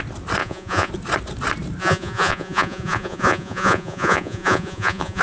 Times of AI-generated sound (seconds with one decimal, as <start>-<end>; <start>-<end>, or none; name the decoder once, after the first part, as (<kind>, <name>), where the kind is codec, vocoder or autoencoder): 0.4-0.9 (vocoder, Vocos); 1.8-5.2

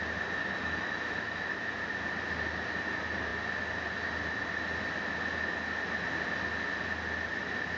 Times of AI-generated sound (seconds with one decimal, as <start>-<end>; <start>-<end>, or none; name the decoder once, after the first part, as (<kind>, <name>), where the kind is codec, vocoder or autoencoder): 0.4-1.7 (autoencoder, DAC-VAE)

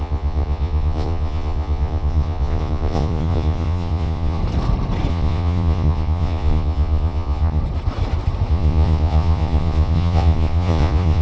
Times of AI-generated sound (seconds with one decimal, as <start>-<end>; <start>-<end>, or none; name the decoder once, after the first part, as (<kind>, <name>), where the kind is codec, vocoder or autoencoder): 0.0-4.4 (vocoder, Vocos); 5.1-7.6; 8.5-11.2

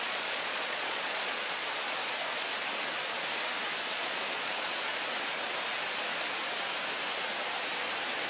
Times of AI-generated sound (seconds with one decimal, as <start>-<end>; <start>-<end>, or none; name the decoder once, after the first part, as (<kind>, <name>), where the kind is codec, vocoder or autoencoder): 0.0-1.6 (vocoder, Vocos); 3.9-4.9

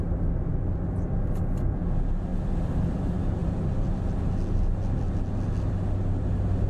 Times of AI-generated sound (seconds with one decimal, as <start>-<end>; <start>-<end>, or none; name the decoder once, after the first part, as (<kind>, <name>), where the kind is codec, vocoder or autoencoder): none